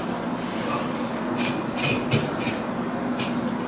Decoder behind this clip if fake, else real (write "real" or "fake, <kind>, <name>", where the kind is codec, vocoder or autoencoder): real